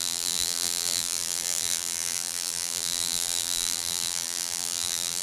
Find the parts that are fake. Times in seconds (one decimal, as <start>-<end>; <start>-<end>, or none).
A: 0.0-5.2